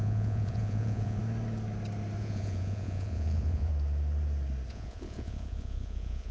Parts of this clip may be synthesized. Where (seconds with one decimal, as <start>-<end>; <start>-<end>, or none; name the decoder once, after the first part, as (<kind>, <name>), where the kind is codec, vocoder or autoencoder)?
0.0-1.2 (vocoder, Vocos); 2.2-3.7; 4.7-6.3